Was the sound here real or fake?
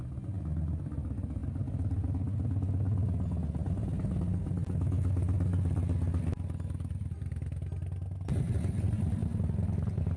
real